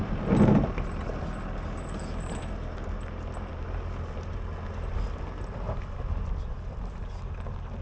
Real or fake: real